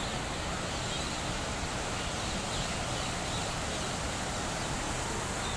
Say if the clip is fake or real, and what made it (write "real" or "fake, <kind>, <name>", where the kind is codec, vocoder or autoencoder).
real